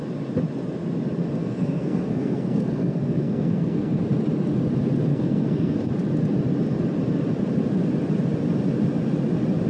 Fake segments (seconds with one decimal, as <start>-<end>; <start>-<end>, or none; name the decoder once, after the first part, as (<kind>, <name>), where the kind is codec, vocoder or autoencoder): 1.4-4.0 (codec, SNAC); 5.1-5.9